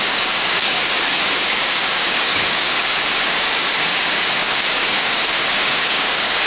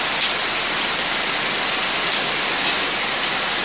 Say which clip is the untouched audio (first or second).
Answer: second